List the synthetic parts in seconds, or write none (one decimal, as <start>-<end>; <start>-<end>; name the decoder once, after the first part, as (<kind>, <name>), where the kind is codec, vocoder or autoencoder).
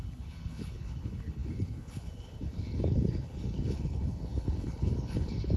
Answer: 0.0-5.6 (codec, HILCodec)